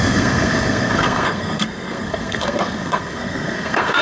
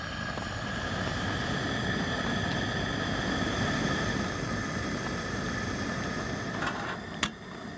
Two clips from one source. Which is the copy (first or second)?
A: first